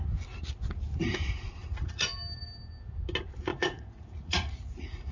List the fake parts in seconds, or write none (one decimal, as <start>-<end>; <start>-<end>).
1.6-2.1; 3.5-5.1